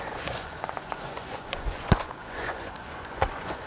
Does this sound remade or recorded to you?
remade